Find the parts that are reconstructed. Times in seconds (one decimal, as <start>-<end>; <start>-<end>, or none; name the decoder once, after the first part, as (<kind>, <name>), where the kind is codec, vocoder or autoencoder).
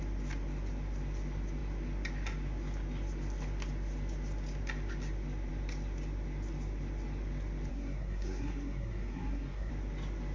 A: 7.7-9.7 (codec, SNAC)